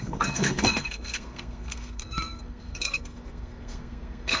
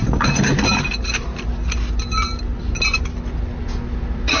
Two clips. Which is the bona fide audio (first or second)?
second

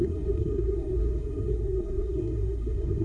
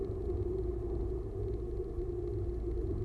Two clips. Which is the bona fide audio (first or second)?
second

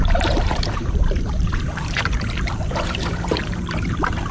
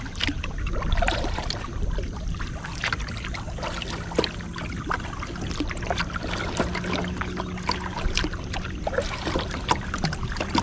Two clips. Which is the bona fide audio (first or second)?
second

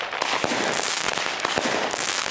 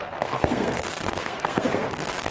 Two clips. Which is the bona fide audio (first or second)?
first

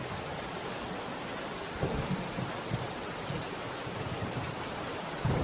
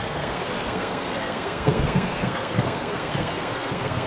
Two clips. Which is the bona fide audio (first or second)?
first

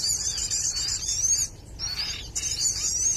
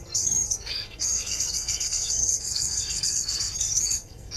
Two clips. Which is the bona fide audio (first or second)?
first